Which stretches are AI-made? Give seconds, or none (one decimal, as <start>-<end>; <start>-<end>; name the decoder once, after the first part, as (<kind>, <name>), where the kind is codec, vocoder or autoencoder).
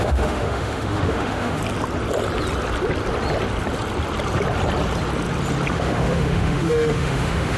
0.0-1.6 (autoencoder, DAC-VAE); 5.7-7.6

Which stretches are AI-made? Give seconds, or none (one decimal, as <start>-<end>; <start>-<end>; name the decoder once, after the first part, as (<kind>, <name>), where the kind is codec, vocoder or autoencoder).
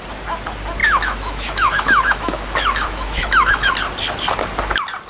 0.8-3.7 (autoencoder, DAC-VAE)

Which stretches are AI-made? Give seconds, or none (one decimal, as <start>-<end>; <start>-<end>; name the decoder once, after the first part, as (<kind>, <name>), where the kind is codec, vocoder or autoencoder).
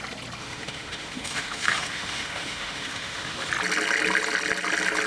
0.4-3.5 (autoencoder, DAC-VAE)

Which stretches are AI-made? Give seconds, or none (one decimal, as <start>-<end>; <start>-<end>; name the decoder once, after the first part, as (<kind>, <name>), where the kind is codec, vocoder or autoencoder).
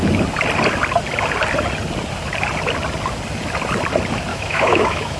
4.3-5.2 (autoencoder, DAC-VAE)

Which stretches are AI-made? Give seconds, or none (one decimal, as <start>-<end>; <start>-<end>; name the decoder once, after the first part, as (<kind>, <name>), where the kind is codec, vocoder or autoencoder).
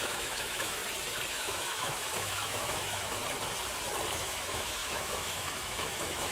0.0-0.8 (autoencoder, DAC-VAE); 1.3-3.2; 4.1-6.3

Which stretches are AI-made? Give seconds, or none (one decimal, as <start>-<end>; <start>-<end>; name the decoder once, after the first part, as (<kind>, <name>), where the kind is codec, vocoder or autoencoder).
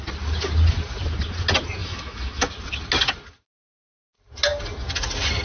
1.8-2.5 (autoencoder, DAC-VAE)